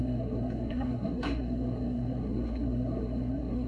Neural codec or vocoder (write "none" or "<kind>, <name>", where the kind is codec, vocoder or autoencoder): codec, SNAC